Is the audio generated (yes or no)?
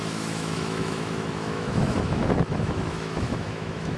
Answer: yes